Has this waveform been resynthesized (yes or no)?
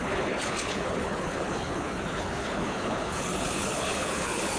yes